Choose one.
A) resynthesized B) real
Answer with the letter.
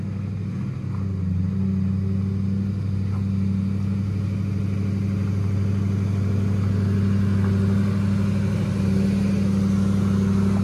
B